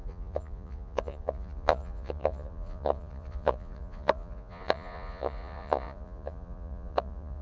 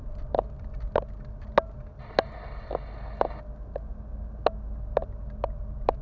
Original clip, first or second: second